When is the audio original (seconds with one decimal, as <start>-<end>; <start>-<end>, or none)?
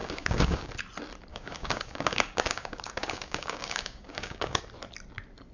0.7-1.3; 4.6-5.5